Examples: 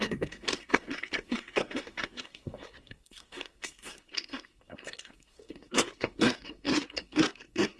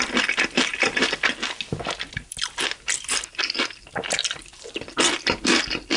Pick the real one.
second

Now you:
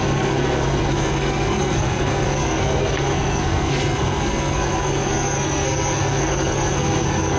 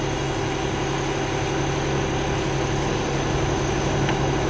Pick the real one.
second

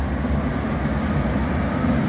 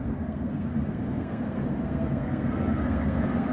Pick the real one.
first